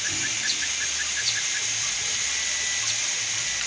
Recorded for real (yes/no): yes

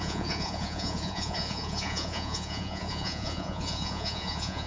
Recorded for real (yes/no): no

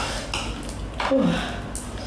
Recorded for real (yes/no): yes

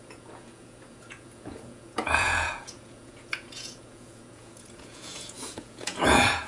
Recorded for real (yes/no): no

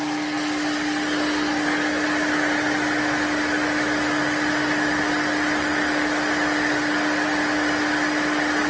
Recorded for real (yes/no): yes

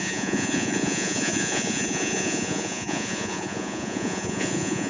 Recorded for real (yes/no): no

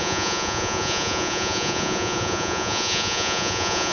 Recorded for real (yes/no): no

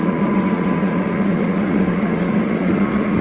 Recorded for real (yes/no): no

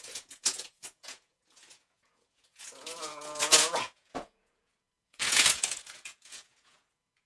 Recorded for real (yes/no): no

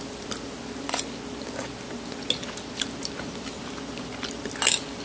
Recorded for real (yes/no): yes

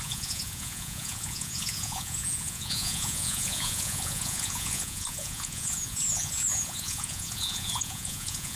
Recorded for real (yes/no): no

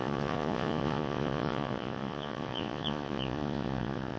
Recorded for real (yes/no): no